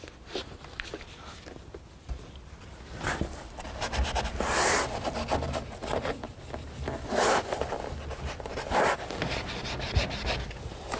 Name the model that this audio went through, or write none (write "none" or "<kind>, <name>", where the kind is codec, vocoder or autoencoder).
none